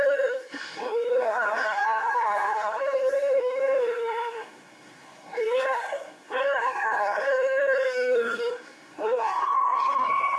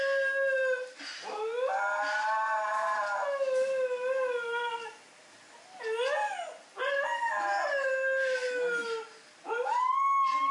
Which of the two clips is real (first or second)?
second